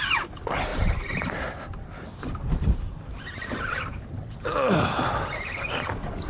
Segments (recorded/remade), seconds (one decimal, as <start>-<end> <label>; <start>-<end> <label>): 0.0-6.3 remade